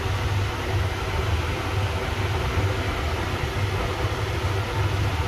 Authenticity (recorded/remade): recorded